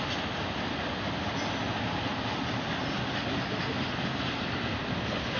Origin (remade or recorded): recorded